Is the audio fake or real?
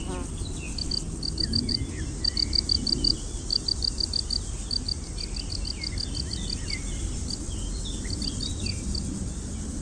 real